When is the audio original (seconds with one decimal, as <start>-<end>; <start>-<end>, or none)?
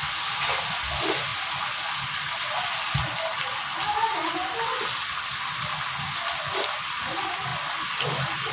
0.0-8.5